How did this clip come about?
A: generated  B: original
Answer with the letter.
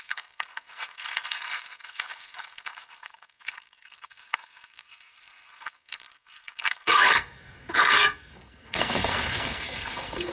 A